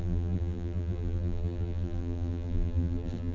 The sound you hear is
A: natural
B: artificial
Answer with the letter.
B